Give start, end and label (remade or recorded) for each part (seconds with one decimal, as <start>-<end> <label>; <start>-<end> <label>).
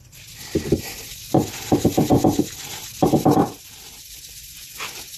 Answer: 0.0-5.2 recorded